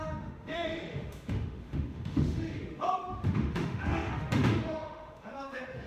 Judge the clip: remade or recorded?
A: remade